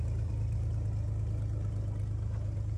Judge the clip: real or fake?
real